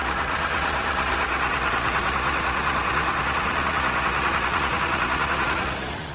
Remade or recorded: remade